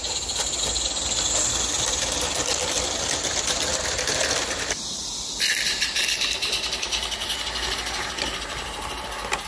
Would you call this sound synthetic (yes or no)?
no